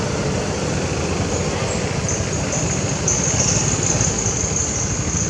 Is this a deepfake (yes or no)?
no